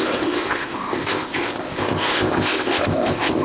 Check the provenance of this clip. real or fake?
fake